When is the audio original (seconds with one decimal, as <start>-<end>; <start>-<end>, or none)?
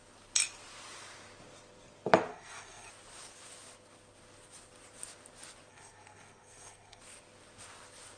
0.0-2.3; 2.9-5.7; 7.0-8.2